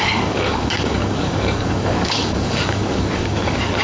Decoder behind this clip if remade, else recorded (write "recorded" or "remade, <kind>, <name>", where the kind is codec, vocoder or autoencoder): remade, codec, DAC